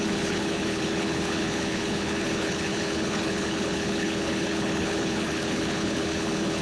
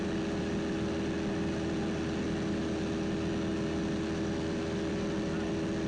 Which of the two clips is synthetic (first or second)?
first